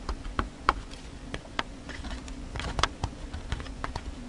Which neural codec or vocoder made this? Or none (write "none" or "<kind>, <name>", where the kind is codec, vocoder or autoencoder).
vocoder, Vocos